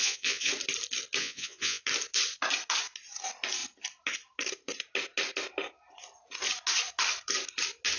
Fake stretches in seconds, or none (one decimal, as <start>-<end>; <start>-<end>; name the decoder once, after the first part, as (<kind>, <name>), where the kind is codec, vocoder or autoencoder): 0.0-0.5 (vocoder, Vocos); 1.2-1.8

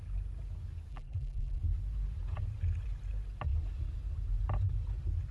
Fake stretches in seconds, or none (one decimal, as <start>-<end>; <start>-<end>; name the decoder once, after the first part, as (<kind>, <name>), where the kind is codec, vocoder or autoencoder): 0.9-1.6 (vocoder, BigVGAN v2)

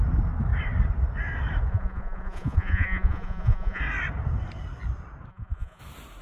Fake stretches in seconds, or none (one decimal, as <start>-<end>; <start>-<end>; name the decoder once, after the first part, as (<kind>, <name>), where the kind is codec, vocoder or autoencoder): 1.7-3.8 (vocoder, Vocos); 5.3-5.8